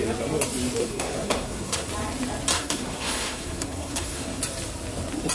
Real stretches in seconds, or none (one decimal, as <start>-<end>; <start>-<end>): 0.0-0.8; 1.9-2.5; 4.4-5.3